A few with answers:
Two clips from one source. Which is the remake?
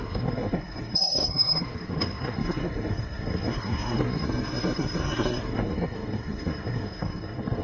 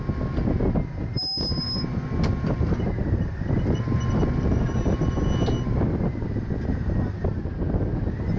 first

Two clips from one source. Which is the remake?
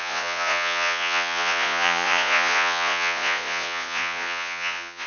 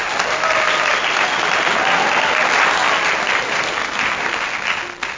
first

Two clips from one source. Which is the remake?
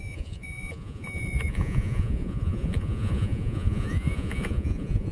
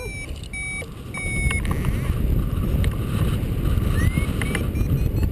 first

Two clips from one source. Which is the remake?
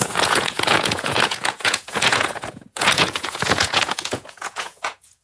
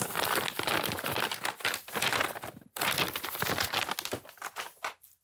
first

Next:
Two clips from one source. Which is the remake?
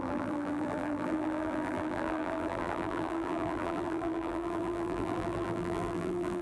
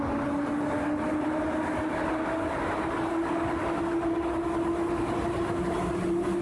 first